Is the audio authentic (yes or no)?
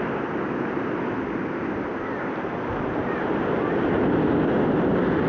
yes